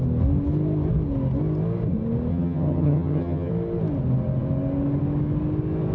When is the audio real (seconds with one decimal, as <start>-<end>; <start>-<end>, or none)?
0.0-2.3; 3.5-5.9